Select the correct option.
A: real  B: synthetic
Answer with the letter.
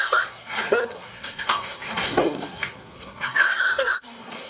B